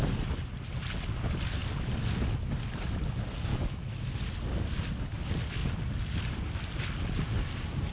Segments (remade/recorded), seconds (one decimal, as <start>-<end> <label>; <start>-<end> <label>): 0.0-3.5 recorded; 3.5-4.1 remade; 4.1-7.9 recorded